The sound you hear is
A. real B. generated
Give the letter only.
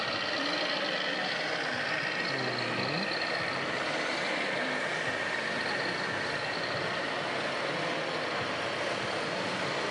A